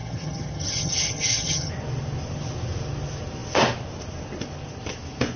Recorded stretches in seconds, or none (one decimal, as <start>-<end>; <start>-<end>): 1.7-5.4